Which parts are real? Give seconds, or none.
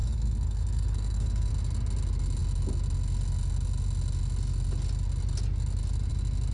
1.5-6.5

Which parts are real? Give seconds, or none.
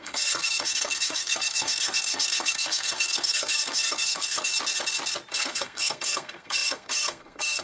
4.5-5.3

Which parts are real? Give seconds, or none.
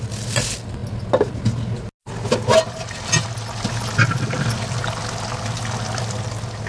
0.0-6.7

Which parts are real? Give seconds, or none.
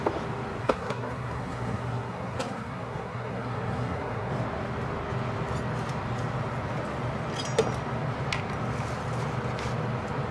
0.0-0.6; 4.3-10.3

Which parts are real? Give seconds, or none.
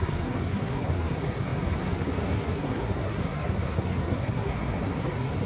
none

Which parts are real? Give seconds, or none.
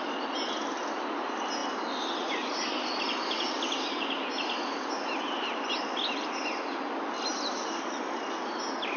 0.0-9.0